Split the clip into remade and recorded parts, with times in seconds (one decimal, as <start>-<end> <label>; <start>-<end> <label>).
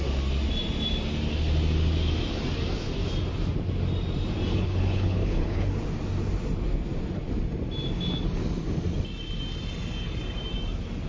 0.0-4.5 recorded; 4.5-5.8 remade; 5.8-11.1 recorded